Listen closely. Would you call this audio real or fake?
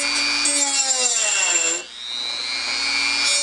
real